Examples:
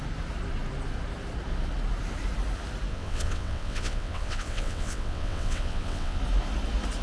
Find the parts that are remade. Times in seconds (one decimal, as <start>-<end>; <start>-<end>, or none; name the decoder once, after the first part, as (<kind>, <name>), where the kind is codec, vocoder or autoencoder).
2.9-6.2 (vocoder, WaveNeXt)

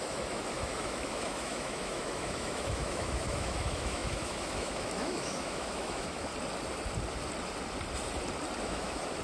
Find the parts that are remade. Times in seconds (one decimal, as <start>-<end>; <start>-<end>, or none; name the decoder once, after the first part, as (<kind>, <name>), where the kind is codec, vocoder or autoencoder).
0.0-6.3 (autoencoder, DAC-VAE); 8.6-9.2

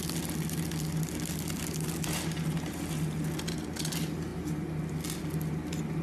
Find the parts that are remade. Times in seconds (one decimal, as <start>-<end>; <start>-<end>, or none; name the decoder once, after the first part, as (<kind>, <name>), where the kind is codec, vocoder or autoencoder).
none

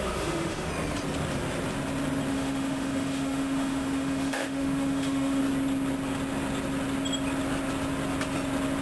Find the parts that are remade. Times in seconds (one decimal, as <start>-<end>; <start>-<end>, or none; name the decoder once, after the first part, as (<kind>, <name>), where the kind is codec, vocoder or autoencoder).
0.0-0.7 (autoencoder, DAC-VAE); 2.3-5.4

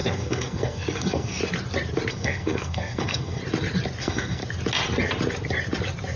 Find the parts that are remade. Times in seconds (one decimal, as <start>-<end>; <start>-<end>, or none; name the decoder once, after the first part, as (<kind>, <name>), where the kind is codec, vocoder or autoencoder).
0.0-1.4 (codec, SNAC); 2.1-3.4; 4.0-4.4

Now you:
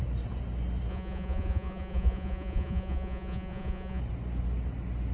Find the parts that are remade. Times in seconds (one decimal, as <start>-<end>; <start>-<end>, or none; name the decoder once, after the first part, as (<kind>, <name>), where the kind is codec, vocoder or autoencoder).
0.9-4.0 (vocoder, Vocos)

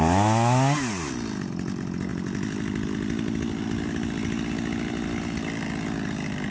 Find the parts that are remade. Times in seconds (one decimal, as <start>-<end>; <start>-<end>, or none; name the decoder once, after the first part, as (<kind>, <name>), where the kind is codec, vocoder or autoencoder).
none